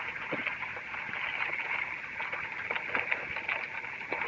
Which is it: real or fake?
real